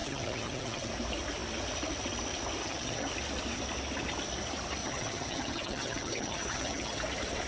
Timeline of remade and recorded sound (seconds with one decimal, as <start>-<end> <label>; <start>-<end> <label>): 0.0-0.9 remade; 0.9-2.6 recorded; 2.6-3.1 remade; 3.1-4.8 recorded; 4.8-7.0 remade; 7.0-7.5 recorded